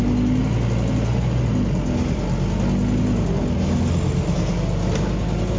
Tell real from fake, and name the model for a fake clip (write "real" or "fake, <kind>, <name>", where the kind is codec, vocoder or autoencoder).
real